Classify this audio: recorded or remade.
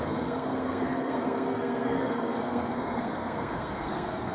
remade